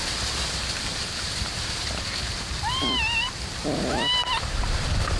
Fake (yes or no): yes